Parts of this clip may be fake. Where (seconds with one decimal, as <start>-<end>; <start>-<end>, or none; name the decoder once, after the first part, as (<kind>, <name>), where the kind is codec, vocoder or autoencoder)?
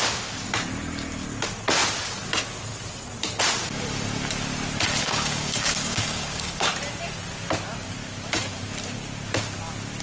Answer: 5.0-6.7 (codec, DAC)